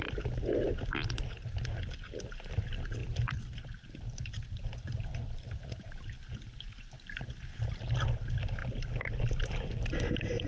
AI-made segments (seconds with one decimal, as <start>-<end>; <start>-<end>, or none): none